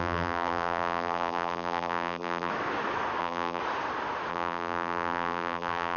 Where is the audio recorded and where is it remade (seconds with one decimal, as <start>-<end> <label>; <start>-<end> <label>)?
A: 0.0-2.5 remade; 2.5-3.2 recorded; 3.2-3.6 remade; 3.6-4.3 recorded; 4.3-6.0 remade